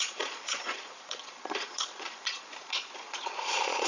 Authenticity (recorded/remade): remade